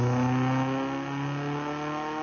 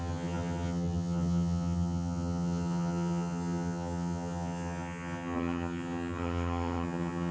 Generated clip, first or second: second